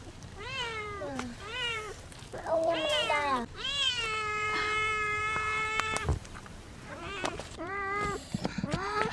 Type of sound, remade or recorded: remade